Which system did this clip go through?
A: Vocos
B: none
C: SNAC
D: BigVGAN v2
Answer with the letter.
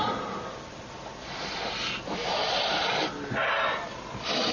B